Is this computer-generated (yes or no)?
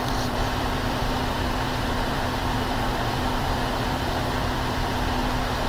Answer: yes